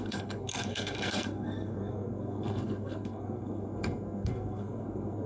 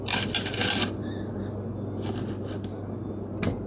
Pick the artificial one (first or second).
first